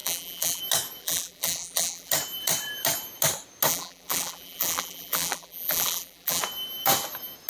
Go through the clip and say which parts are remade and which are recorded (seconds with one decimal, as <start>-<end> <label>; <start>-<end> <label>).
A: 0.0-0.6 remade; 0.6-1.0 recorded; 1.0-2.1 remade; 2.1-3.7 recorded; 3.7-6.4 remade; 6.4-7.5 recorded